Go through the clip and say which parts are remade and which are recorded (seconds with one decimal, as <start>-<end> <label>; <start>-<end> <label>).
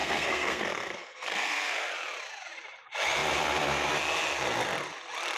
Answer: 0.0-1.9 remade; 1.9-5.4 recorded